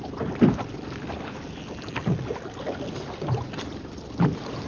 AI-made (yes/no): yes